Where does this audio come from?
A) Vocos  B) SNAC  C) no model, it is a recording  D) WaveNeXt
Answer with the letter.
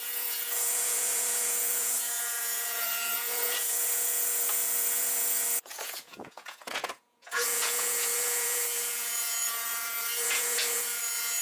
A